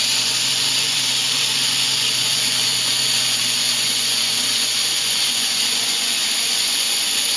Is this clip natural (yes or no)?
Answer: no